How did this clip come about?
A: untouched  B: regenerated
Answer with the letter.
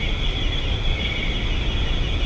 A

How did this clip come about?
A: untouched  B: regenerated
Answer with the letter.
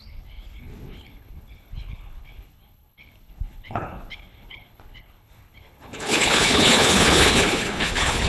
B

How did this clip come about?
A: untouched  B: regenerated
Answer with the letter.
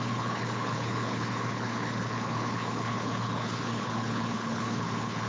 B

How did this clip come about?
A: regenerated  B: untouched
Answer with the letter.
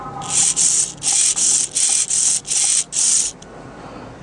B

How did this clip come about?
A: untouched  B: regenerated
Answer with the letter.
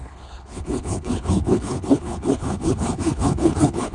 B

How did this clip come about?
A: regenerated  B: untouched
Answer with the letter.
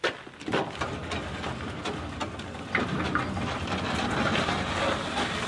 B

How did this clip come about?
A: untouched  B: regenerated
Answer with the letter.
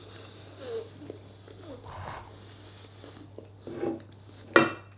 A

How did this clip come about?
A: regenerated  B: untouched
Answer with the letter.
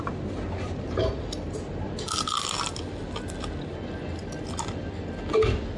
B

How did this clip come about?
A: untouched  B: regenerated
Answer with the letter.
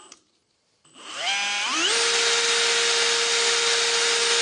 A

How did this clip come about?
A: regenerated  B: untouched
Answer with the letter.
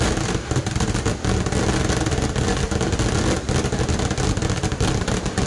B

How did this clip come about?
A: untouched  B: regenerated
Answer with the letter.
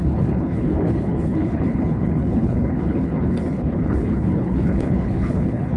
B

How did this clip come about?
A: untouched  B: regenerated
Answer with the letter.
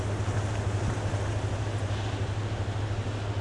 A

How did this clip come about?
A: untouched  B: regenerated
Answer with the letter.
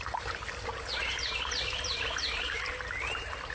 A